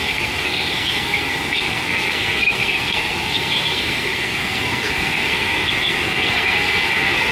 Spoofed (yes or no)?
yes